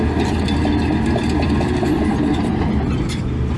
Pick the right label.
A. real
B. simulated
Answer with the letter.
A